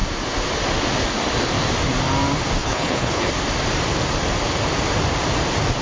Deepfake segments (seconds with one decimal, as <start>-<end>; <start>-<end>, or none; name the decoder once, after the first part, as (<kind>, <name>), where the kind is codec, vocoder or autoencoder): 2.6-3.3 (codec, HILCodec)